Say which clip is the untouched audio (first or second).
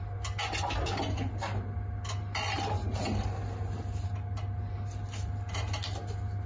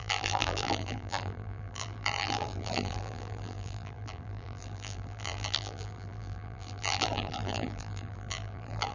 first